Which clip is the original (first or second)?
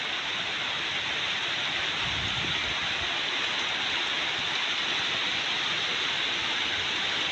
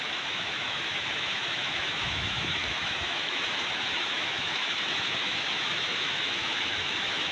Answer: first